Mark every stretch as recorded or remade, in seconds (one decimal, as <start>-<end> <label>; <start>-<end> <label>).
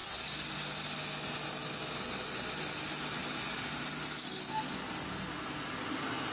0.0-6.3 recorded